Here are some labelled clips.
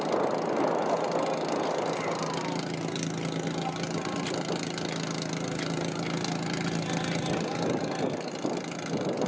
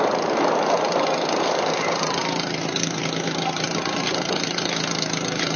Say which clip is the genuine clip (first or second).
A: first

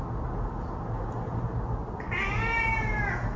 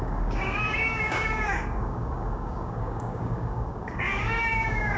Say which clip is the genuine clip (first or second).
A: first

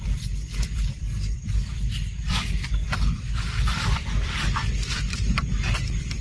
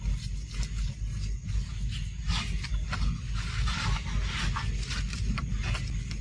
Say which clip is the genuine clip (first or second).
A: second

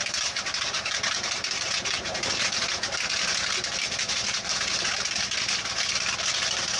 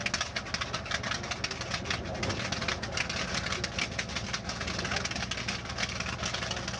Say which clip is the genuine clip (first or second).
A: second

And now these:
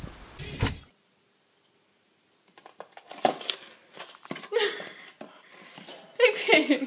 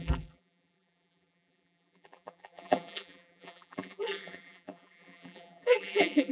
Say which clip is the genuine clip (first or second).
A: first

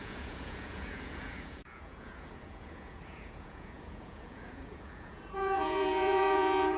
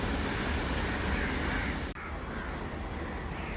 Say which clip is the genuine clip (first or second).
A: second